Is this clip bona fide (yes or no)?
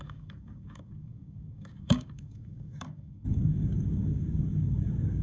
no